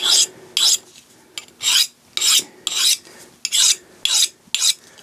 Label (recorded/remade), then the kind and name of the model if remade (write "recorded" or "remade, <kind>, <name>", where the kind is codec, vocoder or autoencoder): recorded